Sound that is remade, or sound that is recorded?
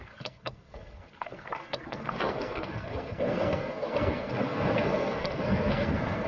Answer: remade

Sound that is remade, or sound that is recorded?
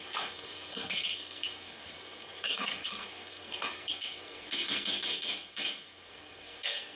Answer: remade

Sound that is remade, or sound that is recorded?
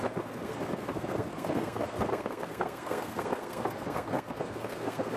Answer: remade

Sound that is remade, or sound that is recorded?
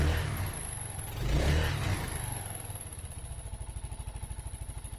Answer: recorded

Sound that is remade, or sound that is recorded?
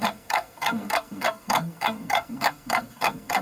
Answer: remade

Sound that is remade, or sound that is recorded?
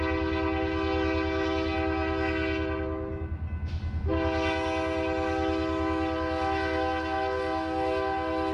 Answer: recorded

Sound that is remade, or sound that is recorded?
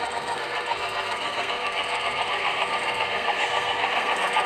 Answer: remade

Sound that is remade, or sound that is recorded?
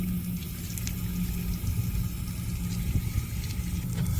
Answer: recorded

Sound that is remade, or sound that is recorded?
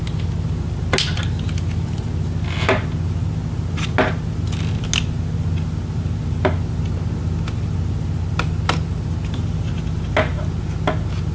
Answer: recorded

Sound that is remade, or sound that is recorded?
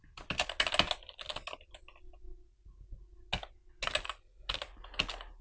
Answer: recorded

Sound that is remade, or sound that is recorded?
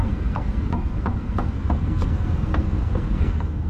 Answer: remade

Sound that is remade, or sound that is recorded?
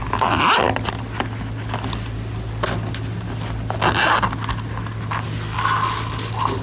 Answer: recorded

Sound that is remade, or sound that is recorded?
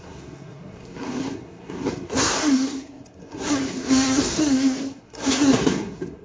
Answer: remade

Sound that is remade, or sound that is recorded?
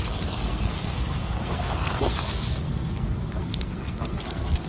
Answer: remade